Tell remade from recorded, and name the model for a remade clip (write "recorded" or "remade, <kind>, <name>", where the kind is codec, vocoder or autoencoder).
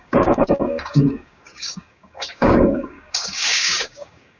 remade, codec, DAC